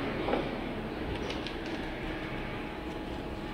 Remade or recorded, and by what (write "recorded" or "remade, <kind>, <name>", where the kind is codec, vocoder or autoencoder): recorded